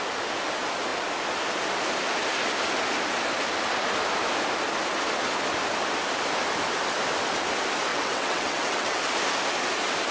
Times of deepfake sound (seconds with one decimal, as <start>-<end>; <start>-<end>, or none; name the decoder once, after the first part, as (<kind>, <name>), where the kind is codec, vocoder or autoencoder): 7.9-9.0 (vocoder, WaveNeXt)